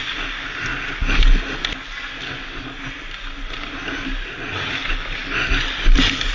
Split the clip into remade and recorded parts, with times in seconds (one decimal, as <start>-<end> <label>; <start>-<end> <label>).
0.0-6.3 recorded